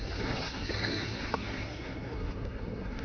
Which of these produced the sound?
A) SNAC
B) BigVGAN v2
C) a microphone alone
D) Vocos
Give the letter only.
A